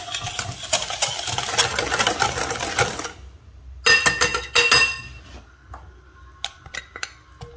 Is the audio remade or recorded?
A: recorded